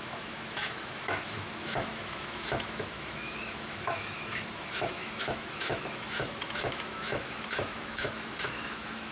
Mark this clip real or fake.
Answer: fake